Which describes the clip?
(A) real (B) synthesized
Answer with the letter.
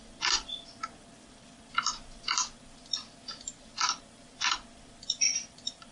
A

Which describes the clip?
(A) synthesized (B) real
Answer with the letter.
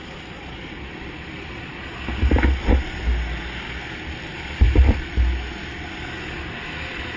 B